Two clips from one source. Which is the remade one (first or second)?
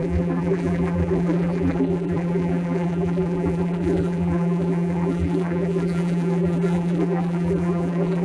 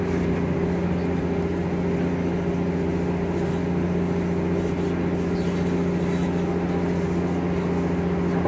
first